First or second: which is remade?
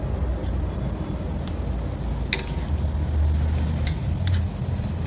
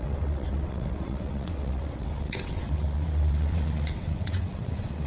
second